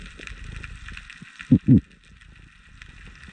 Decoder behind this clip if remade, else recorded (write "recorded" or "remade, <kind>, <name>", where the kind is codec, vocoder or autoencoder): recorded